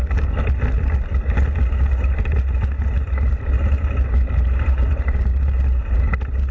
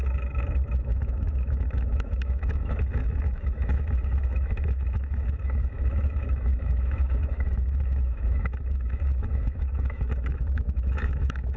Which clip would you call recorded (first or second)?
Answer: first